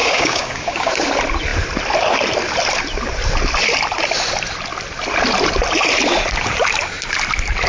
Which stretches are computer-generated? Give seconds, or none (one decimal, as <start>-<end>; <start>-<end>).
0.0-0.9